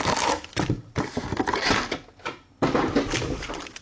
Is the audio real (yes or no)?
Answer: yes